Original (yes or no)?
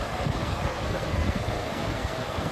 no